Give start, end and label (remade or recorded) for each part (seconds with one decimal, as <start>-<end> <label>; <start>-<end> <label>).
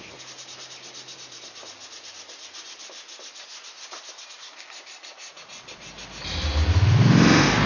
0.0-7.7 recorded